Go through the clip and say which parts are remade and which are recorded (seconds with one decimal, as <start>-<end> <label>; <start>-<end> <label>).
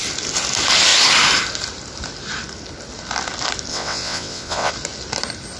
0.0-3.7 recorded; 3.7-4.7 remade; 4.7-5.6 recorded